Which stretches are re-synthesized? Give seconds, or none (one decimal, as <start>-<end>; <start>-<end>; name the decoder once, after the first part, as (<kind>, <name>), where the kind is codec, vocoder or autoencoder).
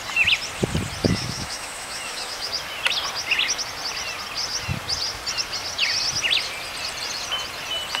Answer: 1.0-2.5 (autoencoder, DAC-VAE)